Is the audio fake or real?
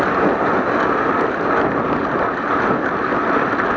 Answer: real